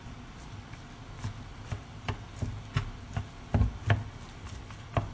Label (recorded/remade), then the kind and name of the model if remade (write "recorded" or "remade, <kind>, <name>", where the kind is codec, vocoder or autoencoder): recorded